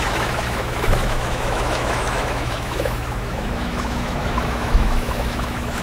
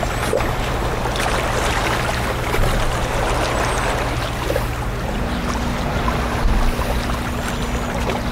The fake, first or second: first